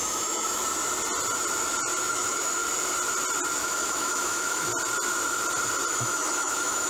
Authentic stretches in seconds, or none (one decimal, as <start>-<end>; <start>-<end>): 0.6-2.0; 2.6-3.6; 4.7-5.9